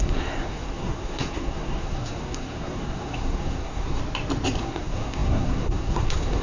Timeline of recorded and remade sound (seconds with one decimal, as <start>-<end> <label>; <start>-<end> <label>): 0.0-4.0 remade; 4.0-4.6 recorded; 4.6-6.4 remade